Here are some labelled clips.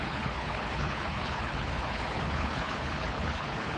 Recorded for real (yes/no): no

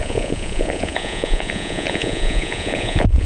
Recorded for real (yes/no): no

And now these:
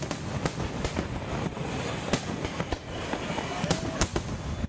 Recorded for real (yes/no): yes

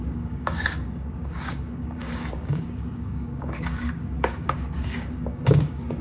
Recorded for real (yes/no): no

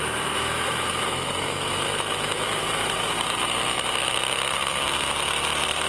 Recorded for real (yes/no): no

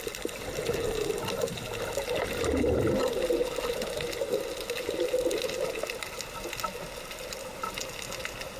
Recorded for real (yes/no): yes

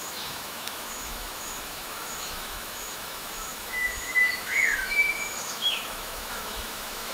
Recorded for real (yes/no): no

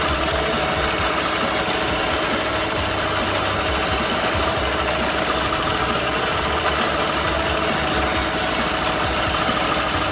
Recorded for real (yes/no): yes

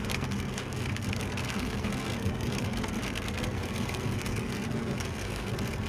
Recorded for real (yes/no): no